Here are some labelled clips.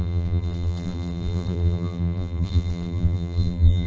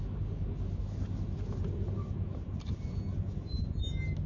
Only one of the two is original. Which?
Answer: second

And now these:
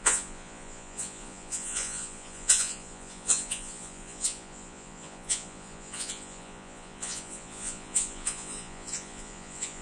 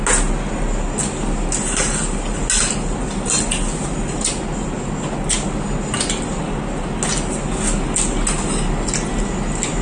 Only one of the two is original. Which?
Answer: second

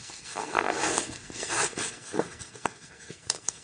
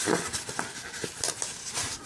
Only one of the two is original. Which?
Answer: second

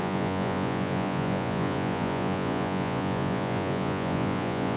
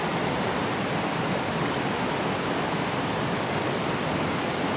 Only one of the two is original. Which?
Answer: second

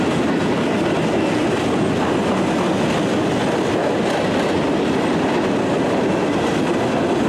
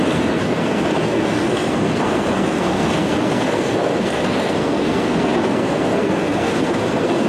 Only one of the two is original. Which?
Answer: first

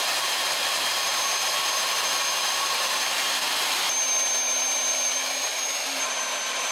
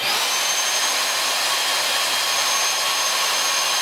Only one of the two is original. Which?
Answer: second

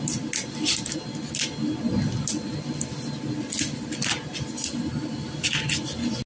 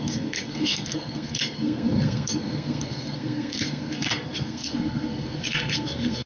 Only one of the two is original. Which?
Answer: first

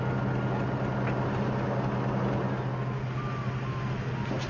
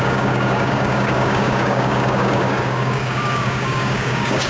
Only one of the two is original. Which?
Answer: first